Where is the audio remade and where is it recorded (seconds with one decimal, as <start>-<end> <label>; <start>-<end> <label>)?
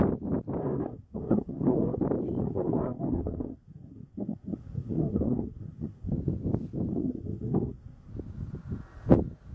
0.0-0.6 recorded; 0.6-2.0 remade; 2.0-2.4 recorded; 2.4-6.1 remade; 6.1-6.9 recorded; 6.9-8.1 remade; 8.1-9.5 recorded